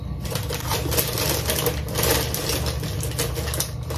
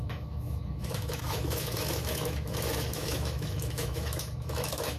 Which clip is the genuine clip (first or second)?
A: first